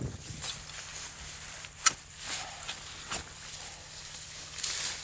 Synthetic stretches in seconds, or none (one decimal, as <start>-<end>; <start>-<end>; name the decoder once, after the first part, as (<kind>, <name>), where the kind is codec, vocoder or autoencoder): none

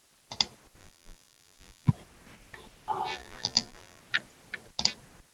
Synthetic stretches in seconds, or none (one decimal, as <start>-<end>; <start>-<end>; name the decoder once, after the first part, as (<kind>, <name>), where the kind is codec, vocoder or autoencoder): 0.8-1.9 (vocoder, BigVGAN v2); 3.1-4.0

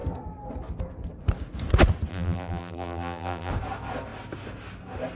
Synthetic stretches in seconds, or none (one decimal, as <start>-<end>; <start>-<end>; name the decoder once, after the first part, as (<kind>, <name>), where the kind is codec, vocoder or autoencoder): 2.1-3.5 (vocoder, BigVGAN v2)

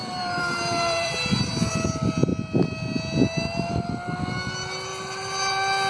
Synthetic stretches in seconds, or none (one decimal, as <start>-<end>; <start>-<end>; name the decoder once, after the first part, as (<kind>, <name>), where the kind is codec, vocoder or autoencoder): 0.0-1.7 (vocoder, BigVGAN v2)

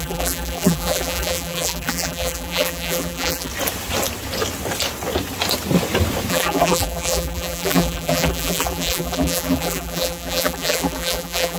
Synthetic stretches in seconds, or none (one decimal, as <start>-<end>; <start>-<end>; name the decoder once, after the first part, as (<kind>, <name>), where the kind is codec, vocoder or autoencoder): 0.0-3.5 (vocoder, BigVGAN v2); 6.3-11.6

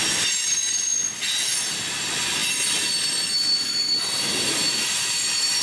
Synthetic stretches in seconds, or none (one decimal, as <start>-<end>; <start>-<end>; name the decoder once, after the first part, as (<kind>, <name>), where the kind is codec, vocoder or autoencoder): 4.5-5.6 (vocoder, BigVGAN v2)

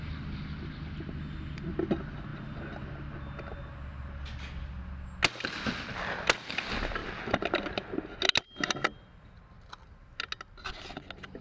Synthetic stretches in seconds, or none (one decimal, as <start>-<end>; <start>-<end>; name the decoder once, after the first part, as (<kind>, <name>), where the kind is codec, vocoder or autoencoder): none